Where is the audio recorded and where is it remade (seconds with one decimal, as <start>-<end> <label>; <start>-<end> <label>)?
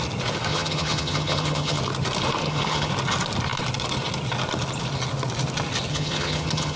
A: 0.0-0.5 recorded; 0.5-1.8 remade; 1.8-2.4 recorded; 2.4-2.9 remade; 2.9-5.9 recorded; 5.9-6.8 remade